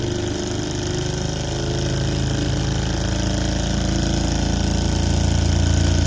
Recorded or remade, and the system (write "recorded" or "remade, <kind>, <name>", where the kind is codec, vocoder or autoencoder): recorded